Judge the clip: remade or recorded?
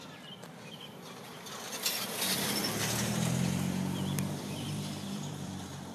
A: remade